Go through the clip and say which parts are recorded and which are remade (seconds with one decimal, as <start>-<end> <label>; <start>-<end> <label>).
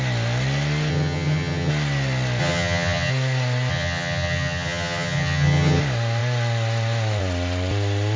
0.0-0.9 recorded; 0.9-1.7 remade; 1.7-2.4 recorded; 2.4-3.1 remade; 3.1-3.7 recorded; 3.7-5.8 remade; 5.8-8.2 recorded